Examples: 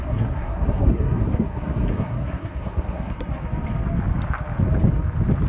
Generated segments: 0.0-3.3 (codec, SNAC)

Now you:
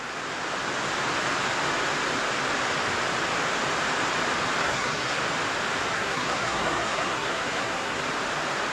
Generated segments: 4.6-5.2 (codec, SNAC); 5.9-8.0

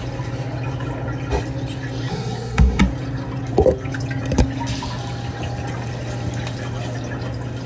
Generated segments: 2.1-2.8 (codec, SNAC)

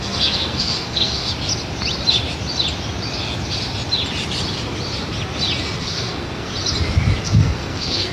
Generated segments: 0.0-1.3 (codec, SNAC); 5.8-6.5; 7.2-8.1

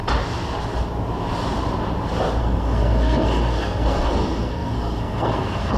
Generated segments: 2.4-5.8 (codec, SNAC)

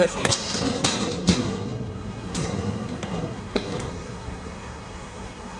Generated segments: 0.0-5.6 (codec, SNAC)

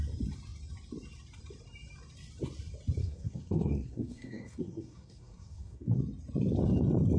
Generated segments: 3.0-6.0 (codec, SNAC)